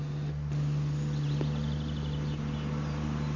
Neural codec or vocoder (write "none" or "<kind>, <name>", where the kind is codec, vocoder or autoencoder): none